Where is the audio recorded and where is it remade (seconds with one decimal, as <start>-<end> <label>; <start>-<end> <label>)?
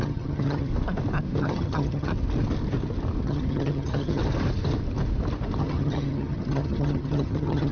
0.0-0.7 remade; 0.7-1.4 recorded; 1.4-2.1 remade; 2.1-3.2 recorded; 3.2-4.2 remade; 4.2-5.6 recorded; 5.6-7.7 remade